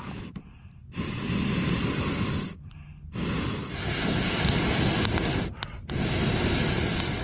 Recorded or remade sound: recorded